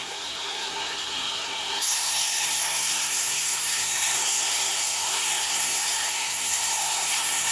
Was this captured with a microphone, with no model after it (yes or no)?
no